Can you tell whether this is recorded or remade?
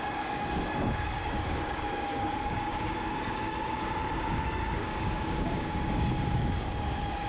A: remade